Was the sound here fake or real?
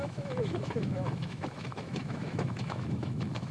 fake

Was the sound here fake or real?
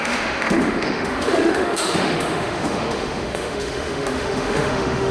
fake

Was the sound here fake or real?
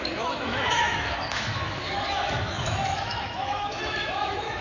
fake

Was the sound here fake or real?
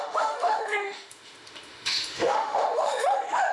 fake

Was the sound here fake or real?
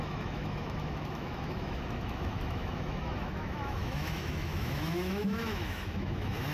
fake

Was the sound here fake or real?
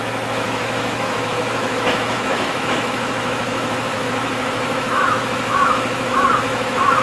fake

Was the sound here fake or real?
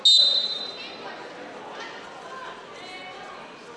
real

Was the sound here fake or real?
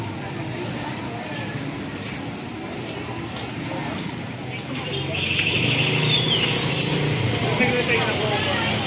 real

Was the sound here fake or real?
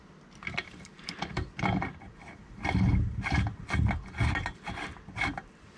real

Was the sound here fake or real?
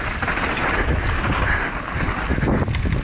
real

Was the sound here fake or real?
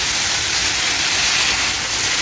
real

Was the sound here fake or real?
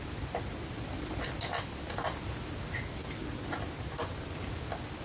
real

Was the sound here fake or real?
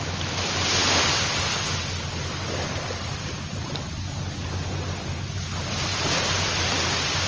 real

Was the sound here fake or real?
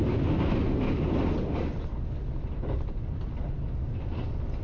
real